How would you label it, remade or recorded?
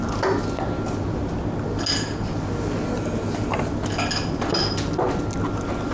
recorded